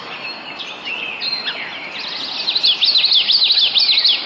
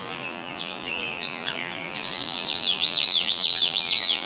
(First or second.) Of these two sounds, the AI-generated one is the second